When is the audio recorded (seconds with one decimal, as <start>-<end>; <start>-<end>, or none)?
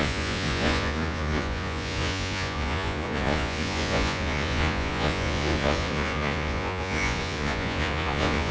none